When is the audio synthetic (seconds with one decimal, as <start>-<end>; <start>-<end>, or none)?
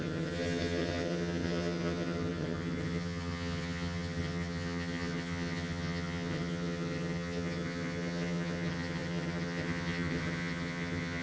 0.0-11.2